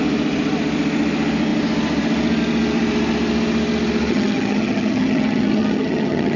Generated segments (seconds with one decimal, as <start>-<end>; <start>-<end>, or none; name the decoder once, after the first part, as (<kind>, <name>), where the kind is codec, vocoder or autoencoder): 4.1-6.4 (vocoder, HiFi-GAN)